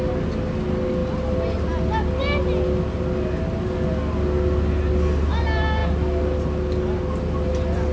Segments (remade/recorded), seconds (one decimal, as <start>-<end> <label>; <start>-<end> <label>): 0.0-7.9 recorded